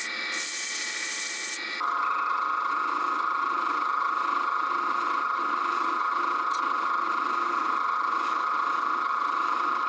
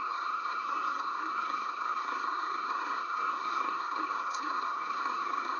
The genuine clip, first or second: first